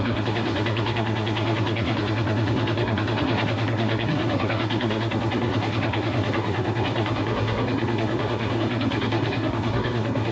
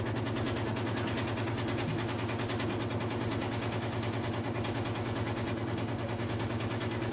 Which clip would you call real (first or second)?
second